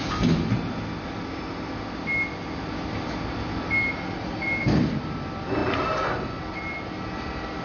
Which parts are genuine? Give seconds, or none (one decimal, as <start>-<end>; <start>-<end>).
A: 0.0-7.6